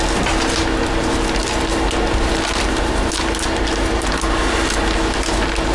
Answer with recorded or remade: recorded